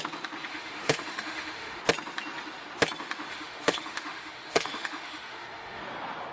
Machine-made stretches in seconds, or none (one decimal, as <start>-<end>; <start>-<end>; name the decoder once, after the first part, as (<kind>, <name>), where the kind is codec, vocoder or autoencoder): 0.5-1.8 (autoencoder, DAC-VAE); 3.3-5.8